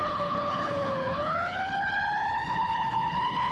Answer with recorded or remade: remade